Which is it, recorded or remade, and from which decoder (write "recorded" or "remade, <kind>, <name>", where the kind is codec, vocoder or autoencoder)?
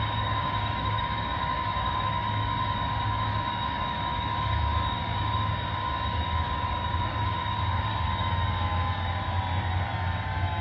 remade, codec, DAC